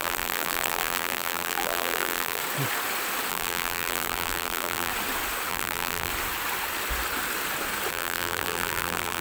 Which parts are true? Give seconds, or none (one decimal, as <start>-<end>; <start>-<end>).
2.4-3.3; 4.9-5.5; 6.1-7.9